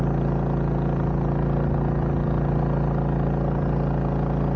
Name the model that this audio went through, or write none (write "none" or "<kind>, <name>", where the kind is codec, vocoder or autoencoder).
none